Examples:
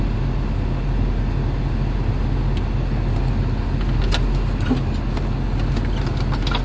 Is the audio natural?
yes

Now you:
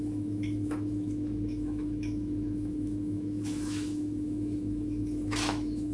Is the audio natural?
no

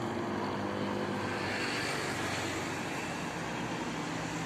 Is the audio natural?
yes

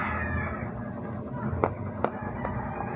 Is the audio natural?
yes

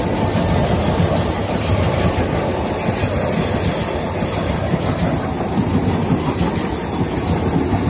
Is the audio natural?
yes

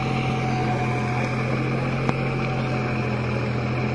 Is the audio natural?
yes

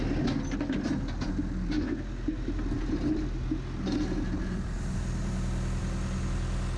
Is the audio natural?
yes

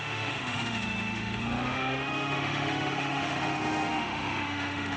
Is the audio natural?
no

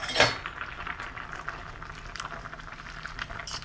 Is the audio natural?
yes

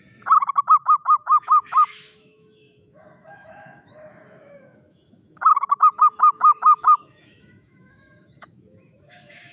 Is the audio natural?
no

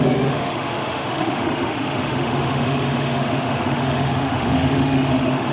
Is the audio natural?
no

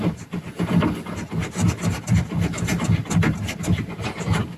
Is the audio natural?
yes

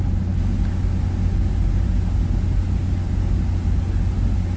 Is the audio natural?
yes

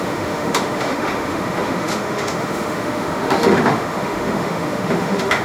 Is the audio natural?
no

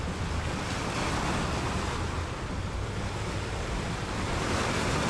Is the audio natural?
yes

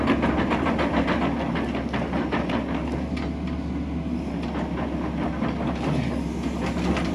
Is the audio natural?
yes